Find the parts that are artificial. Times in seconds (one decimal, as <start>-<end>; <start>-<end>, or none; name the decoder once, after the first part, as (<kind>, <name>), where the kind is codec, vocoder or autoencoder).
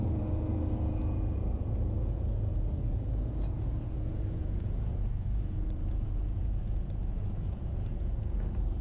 0.0-8.8 (vocoder, Vocos)